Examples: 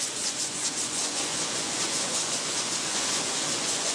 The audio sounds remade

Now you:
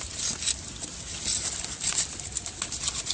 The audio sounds recorded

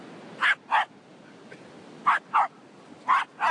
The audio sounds recorded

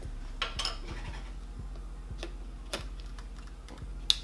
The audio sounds recorded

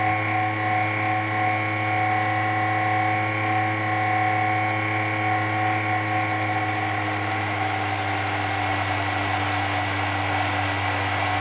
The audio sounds recorded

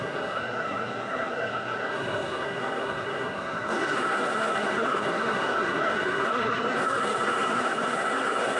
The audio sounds remade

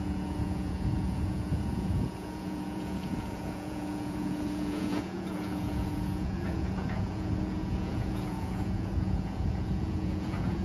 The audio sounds remade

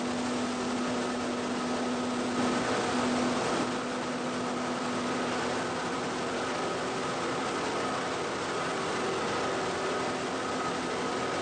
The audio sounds recorded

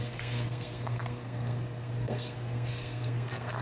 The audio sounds remade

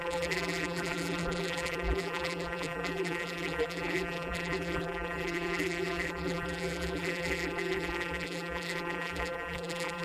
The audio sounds remade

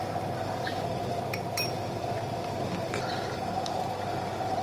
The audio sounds recorded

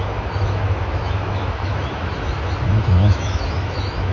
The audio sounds remade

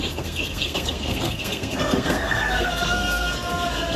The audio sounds remade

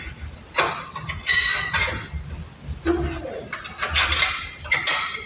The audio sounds recorded